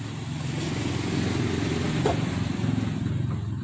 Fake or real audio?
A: real